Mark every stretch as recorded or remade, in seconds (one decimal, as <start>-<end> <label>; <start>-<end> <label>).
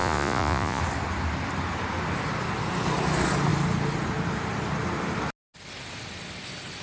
0.0-0.8 remade; 0.8-6.8 recorded